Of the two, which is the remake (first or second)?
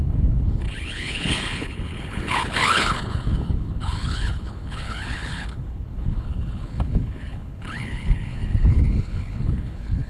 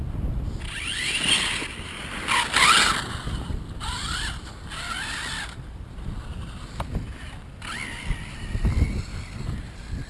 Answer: first